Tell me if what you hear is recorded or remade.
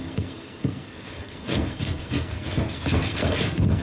remade